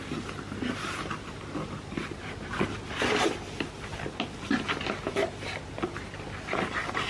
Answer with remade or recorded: recorded